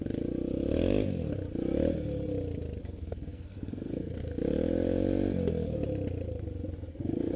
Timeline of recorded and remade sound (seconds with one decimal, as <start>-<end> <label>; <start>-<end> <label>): 0.0-2.8 recorded; 2.8-4.2 remade; 4.2-6.9 recorded; 6.9-7.4 remade